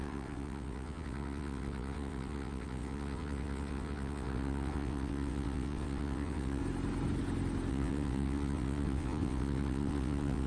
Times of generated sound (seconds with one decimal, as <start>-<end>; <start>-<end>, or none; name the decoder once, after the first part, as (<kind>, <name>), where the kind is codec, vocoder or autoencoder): 0.0-6.6 (vocoder, WaveNeXt); 7.7-10.5

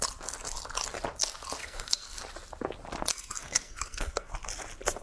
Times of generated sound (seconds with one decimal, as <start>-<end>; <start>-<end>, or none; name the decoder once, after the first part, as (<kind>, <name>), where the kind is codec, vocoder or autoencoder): 1.6-2.2 (codec, SNAC); 3.1-4.3

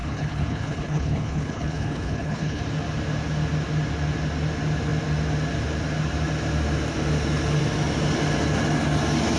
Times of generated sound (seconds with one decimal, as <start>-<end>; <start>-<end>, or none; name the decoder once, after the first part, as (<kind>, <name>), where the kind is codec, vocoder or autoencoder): 0.0-2.6 (codec, HILCodec)

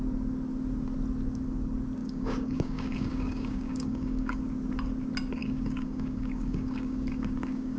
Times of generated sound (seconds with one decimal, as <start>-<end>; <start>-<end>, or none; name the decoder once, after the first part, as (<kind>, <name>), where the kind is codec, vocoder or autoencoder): 2.0-4.4 (codec, DAC); 5.4-7.8

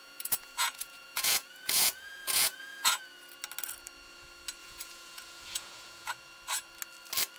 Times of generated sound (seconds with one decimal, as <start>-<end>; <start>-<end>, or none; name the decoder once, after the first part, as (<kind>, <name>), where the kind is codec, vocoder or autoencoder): 0.0-3.0 (vocoder, Vocos); 4.6-6.1

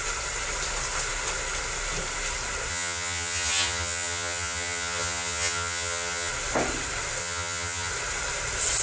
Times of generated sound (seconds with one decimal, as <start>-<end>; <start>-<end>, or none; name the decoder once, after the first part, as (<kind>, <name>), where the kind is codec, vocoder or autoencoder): 2.7-6.3 (vocoder, HiFi-GAN); 7.2-7.9

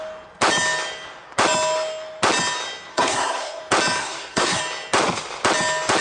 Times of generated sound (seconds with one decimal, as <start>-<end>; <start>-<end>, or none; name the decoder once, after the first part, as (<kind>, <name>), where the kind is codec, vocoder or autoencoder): 2.9-3.6 (codec, SNAC); 4.0-4.6

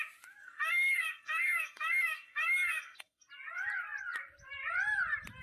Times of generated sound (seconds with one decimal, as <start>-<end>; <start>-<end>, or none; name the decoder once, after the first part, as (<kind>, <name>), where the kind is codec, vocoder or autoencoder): 0.4-3.3 (codec, SNAC)